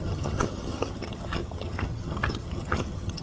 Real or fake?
fake